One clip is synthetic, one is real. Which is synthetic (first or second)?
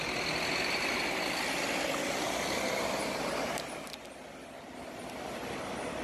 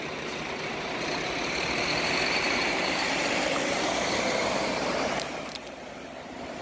second